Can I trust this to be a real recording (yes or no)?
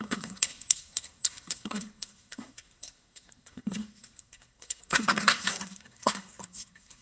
no